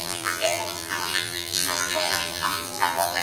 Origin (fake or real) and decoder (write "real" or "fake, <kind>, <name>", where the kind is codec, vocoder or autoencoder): fake, vocoder, BigVGAN v2